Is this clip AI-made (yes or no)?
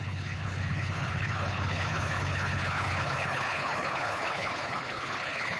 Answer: yes